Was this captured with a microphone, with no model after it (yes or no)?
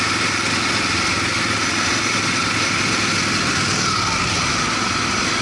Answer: yes